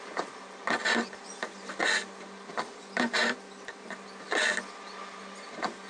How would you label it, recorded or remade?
recorded